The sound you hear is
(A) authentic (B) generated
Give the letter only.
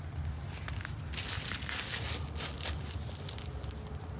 A